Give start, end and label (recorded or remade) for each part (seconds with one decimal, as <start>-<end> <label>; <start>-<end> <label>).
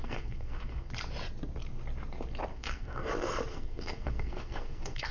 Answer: 0.0-0.9 remade; 0.9-2.5 recorded; 2.5-3.1 remade; 3.1-3.5 recorded; 3.5-5.1 remade